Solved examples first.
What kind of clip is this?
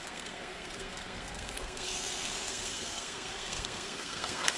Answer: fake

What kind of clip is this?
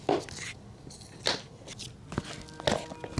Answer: real